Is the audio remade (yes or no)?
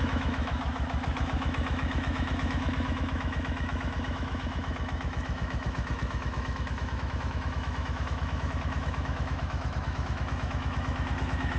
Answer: yes